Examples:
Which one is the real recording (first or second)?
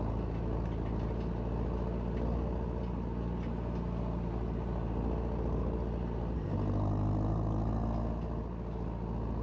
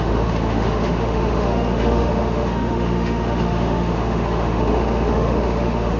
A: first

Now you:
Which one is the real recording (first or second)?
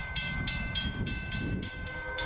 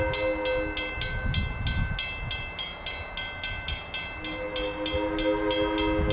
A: second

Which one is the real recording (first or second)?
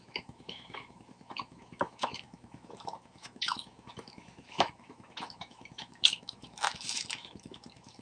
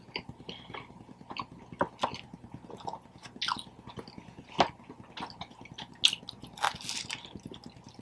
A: second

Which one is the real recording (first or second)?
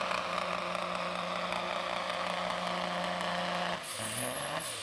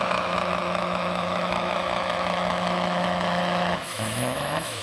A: first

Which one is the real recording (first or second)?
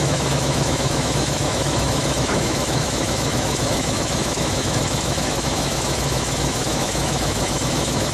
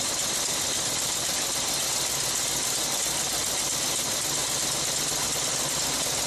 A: second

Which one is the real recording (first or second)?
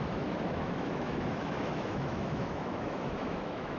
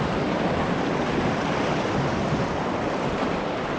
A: second